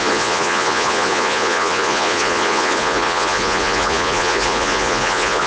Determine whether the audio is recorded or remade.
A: remade